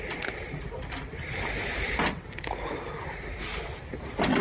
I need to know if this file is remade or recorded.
remade